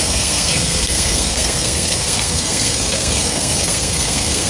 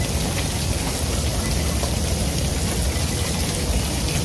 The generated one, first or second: first